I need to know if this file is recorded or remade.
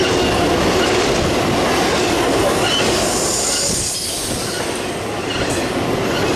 recorded